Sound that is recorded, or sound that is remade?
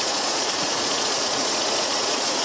remade